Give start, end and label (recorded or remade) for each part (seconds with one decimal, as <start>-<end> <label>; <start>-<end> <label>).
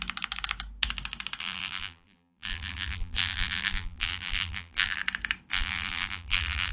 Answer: 0.0-1.4 recorded; 1.4-5.0 remade; 5.0-5.5 recorded; 5.5-6.7 remade